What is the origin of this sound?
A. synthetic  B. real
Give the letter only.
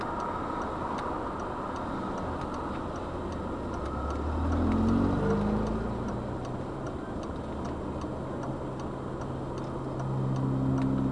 B